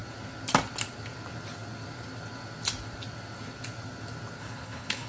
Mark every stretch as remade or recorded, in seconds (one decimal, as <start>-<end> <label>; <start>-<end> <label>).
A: 0.0-4.4 recorded; 4.4-5.1 remade